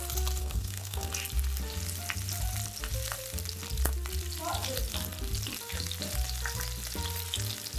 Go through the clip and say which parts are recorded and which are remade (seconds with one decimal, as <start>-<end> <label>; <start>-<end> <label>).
0.0-0.4 recorded; 0.4-1.1 remade; 1.1-7.8 recorded